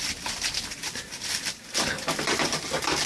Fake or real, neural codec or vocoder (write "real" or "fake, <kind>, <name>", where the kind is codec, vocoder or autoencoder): real